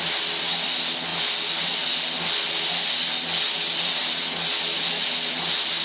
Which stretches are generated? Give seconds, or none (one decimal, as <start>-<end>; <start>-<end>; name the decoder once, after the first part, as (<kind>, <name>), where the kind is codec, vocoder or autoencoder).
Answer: none